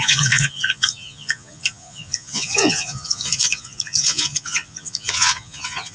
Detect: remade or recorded remade